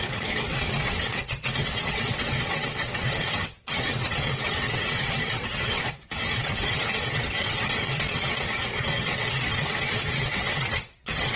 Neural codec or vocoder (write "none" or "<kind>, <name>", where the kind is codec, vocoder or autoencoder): vocoder, WaveNeXt